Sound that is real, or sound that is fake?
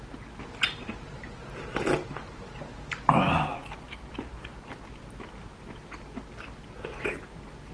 real